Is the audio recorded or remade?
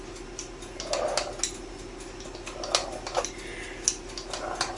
recorded